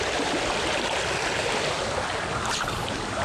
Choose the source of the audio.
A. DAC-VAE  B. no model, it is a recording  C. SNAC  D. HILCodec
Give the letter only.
B